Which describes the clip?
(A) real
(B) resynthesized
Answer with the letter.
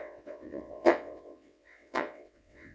B